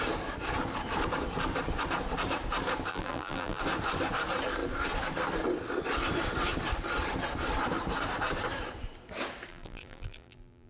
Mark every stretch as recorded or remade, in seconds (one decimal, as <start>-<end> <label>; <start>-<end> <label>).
0.0-2.9 recorded; 2.9-3.6 remade; 3.6-9.5 recorded; 9.5-10.7 remade